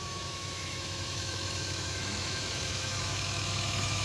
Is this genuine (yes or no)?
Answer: no